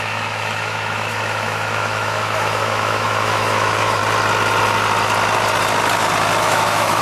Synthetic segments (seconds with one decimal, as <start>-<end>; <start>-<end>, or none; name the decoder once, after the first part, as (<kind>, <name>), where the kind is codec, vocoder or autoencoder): 0.0-4.0 (autoencoder, DAC-VAE); 6.4-7.0